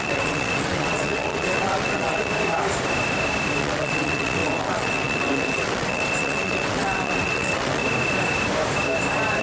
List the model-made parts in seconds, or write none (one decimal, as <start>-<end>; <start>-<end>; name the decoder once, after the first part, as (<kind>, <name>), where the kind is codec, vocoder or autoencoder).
0.0-2.3 (vocoder, WaveNeXt); 3.6-7.8